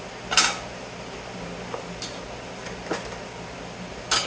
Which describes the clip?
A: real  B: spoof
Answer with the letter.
A